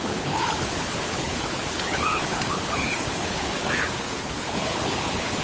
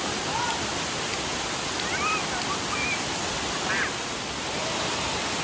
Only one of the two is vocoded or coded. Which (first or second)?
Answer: first